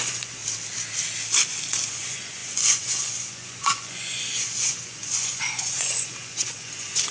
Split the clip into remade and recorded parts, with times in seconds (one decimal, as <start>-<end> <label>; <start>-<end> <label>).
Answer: 0.0-0.4 remade; 0.4-1.9 recorded; 1.9-7.1 remade